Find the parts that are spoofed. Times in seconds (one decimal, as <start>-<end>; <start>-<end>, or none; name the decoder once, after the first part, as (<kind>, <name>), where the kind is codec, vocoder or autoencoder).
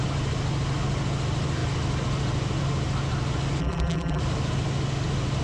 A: 3.6-4.2 (vocoder, BigVGAN v2)